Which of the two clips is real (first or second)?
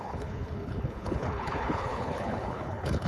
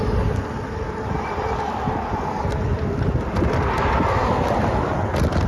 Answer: second